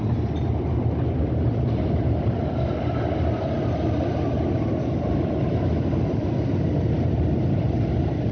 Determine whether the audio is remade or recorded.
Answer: recorded